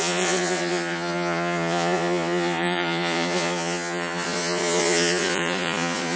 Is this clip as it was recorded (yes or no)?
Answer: no